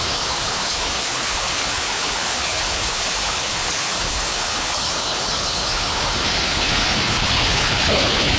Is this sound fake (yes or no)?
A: yes